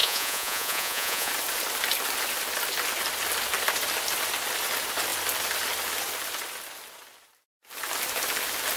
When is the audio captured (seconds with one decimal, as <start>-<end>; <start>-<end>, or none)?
1.3-8.8